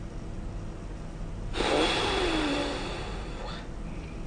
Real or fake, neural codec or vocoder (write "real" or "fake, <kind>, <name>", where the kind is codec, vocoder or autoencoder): real